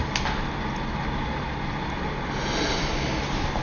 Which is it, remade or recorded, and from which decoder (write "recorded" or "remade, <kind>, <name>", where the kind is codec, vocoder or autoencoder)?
recorded